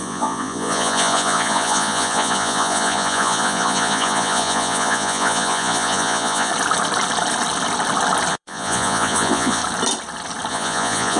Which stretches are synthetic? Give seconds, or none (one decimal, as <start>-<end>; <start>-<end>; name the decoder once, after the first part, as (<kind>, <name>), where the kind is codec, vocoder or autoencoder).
0.0-6.5 (vocoder, Vocos); 8.3-9.6; 10.5-11.2